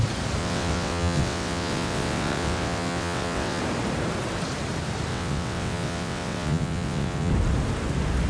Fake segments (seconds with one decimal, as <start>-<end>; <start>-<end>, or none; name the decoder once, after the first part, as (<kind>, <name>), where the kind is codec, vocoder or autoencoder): 0.4-3.6 (vocoder, WaveNeXt); 5.1-7.3